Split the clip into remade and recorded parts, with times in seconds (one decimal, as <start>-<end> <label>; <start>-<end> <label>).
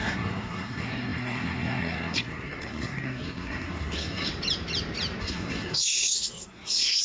0.0-4.3 remade; 4.3-5.2 recorded; 5.2-7.0 remade